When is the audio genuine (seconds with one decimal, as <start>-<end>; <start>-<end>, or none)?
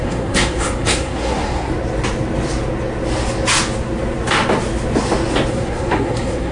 1.7-5.5